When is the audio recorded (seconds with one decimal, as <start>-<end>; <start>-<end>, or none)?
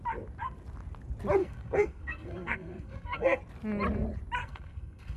0.0-1.4; 3.4-4.4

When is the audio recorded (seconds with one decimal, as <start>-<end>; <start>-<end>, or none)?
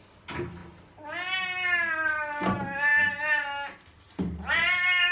0.0-5.1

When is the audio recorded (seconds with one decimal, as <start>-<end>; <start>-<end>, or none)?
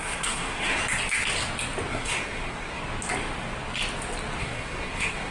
0.8-1.9; 2.8-4.4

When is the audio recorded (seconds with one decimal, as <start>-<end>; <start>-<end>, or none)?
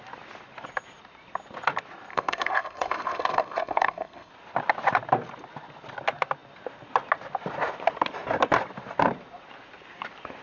0.0-2.1; 4.3-10.4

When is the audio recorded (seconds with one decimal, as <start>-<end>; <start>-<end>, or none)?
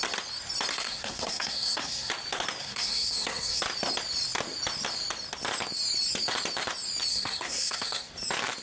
0.0-0.7; 2.1-2.6; 3.6-7.1; 8.1-8.6